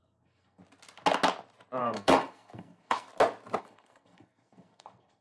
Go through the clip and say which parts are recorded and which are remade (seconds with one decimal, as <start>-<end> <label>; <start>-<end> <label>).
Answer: 0.0-0.6 remade; 0.6-1.8 recorded; 1.8-3.1 remade; 3.1-3.6 recorded; 3.6-5.2 remade